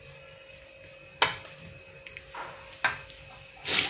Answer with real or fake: real